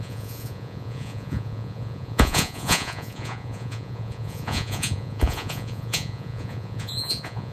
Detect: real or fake fake